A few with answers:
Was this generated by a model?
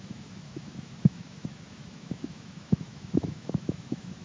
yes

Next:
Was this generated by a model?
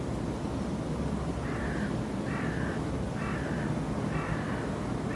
no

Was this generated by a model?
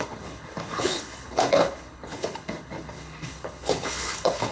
yes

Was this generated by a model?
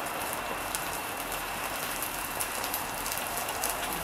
yes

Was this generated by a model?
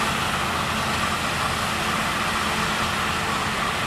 no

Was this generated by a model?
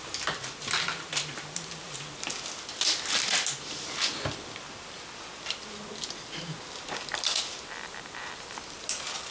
no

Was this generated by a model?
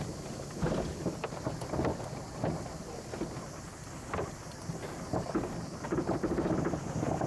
no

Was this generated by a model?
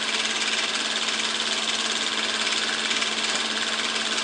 no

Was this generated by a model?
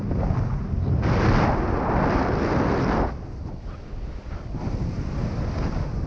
yes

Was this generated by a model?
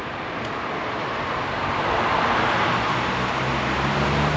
no